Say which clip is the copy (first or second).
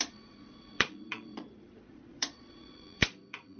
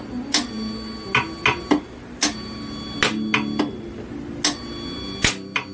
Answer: first